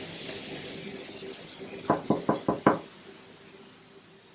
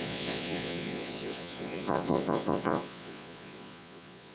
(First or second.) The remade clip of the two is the second